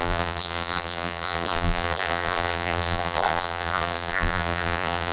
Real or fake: fake